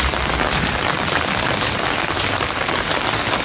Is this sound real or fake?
real